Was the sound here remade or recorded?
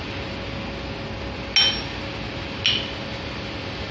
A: recorded